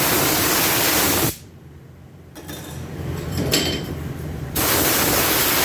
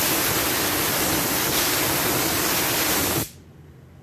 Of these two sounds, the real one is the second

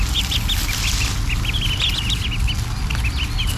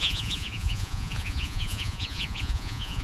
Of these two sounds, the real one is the first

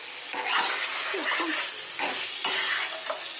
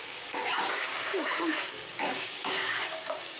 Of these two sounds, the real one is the first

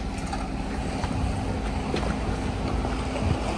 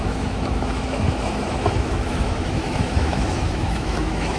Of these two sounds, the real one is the first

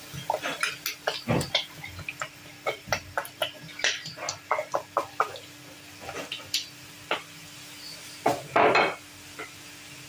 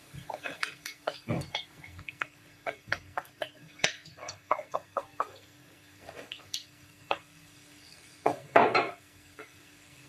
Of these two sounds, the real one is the first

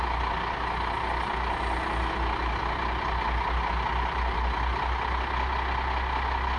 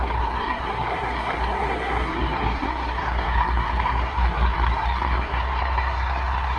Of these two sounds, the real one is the first